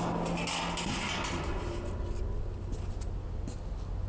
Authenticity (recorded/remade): recorded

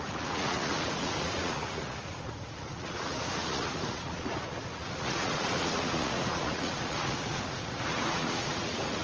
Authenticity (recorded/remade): remade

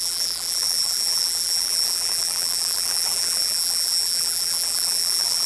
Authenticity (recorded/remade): remade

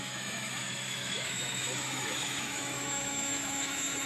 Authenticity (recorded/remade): remade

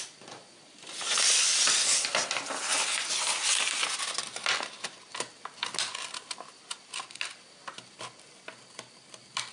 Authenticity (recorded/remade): recorded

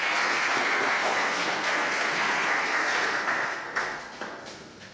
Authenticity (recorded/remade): remade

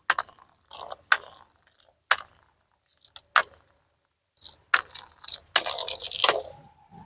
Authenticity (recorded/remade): recorded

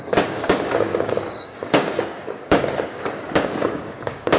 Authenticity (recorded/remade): remade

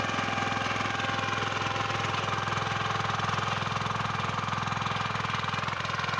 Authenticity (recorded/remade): recorded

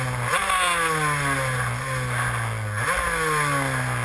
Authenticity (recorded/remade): recorded